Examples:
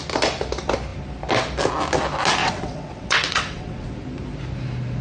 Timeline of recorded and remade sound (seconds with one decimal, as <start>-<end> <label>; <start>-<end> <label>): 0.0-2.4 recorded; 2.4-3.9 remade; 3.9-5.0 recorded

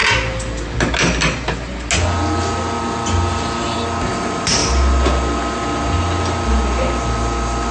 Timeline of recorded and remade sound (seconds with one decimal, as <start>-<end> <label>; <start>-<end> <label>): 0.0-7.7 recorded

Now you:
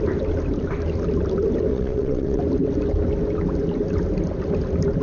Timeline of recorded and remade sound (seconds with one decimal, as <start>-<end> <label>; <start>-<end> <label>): 0.0-1.7 recorded; 1.7-2.4 remade; 2.4-5.0 recorded